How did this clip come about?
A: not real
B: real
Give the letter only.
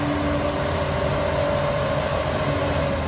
B